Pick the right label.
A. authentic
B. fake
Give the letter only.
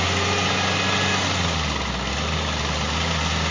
A